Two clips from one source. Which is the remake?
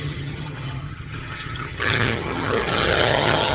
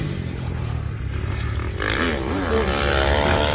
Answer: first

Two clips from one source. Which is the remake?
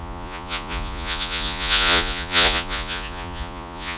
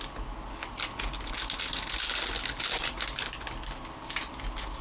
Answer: first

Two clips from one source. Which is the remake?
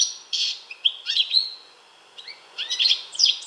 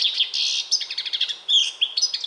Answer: first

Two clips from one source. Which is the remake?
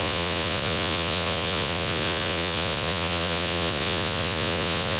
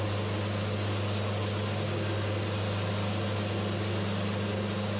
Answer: first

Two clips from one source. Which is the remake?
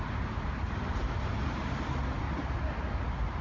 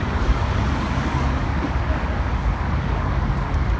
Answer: second